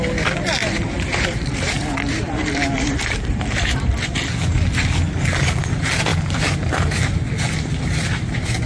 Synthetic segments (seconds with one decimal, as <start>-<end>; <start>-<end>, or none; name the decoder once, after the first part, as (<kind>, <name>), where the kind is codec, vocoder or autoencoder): 0.6-4.2 (vocoder, BigVGAN v2); 6.1-7.2